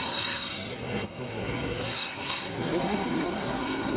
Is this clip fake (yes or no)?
yes